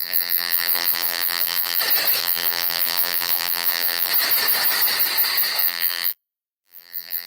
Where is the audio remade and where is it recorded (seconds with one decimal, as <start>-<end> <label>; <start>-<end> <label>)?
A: 0.0-1.8 remade; 1.8-2.2 recorded; 2.2-4.1 remade; 4.1-5.6 recorded; 5.6-7.3 remade